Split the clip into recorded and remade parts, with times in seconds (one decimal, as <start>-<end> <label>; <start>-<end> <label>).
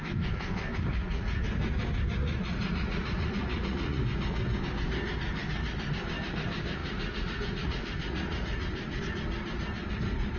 0.0-0.9 recorded; 0.9-1.4 remade; 1.4-2.2 recorded; 2.2-4.0 remade; 4.0-6.8 recorded; 6.8-9.0 remade; 9.0-10.4 recorded